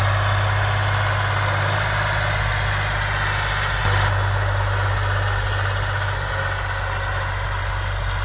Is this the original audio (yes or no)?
yes